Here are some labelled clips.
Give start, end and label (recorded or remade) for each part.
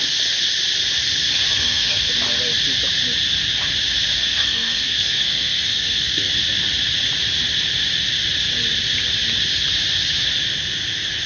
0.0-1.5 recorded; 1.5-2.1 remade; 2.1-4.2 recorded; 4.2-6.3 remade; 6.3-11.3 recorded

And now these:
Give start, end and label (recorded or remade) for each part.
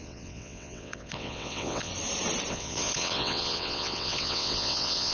0.0-1.9 remade; 1.9-2.5 recorded; 2.5-5.1 remade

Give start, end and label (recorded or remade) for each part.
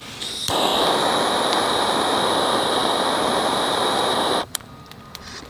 0.0-0.7 remade; 0.7-1.5 recorded; 1.5-5.5 remade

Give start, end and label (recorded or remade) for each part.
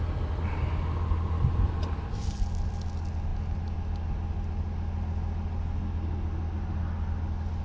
0.0-7.6 recorded